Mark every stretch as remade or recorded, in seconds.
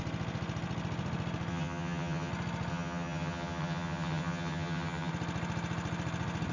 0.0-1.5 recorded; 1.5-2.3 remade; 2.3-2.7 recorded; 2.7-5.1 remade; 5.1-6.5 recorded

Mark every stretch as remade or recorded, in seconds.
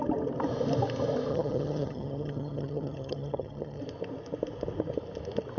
0.0-1.3 recorded; 1.3-3.8 remade; 3.8-5.6 recorded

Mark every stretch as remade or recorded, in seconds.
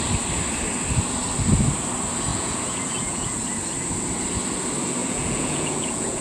0.0-2.3 recorded; 2.3-3.4 remade; 3.4-5.0 recorded; 5.0-6.2 remade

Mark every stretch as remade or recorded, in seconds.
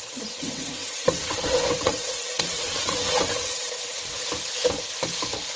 0.0-4.2 remade; 4.2-5.6 recorded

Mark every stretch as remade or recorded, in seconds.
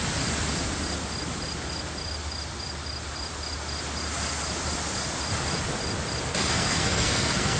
0.0-6.3 recorded; 6.3-7.6 remade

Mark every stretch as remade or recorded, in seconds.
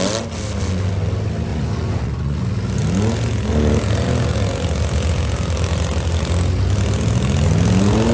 0.0-1.5 recorded; 1.5-2.4 remade; 2.4-8.1 recorded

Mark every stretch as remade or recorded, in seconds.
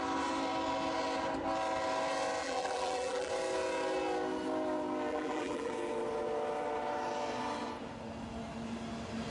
0.0-2.4 recorded; 2.4-3.3 remade; 3.3-5.1 recorded; 5.1-5.7 remade; 5.7-9.3 recorded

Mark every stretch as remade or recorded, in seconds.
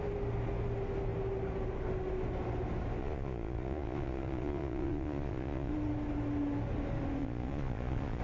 0.0-3.0 recorded; 3.0-5.7 remade; 5.7-7.2 recorded; 7.2-8.2 remade